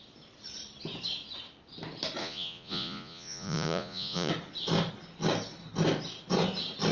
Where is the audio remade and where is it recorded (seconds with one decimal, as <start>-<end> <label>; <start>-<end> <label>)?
0.0-2.2 recorded; 2.2-4.3 remade; 4.3-6.9 recorded